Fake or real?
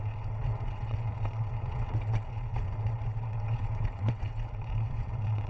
fake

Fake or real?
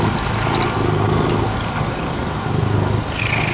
real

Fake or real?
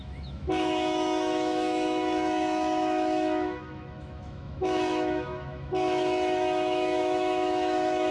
fake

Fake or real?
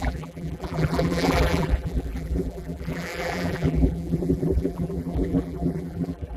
fake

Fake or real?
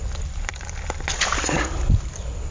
real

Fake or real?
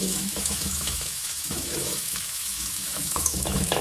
fake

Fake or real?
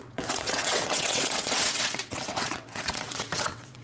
fake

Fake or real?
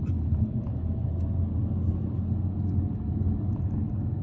real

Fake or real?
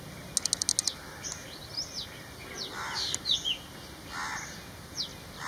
real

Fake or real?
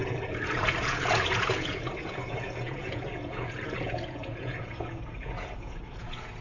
fake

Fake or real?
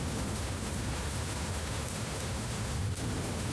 fake